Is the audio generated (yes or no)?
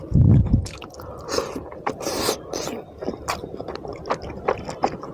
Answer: no